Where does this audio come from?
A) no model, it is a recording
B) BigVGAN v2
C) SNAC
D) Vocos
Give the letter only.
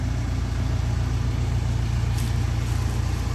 A